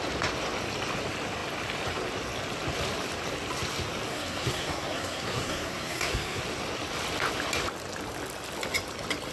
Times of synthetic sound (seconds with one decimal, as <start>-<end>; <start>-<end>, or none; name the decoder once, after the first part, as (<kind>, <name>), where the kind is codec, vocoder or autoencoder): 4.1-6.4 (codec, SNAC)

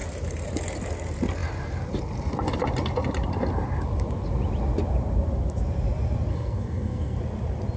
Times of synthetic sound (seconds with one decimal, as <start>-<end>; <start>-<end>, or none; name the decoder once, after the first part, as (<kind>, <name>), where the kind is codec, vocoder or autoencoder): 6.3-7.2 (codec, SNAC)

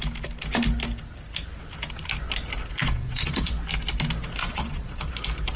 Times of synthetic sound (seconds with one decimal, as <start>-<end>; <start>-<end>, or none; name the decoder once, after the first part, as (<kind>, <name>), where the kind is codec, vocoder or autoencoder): 2.8-3.5 (vocoder, Vocos); 4.4-5.1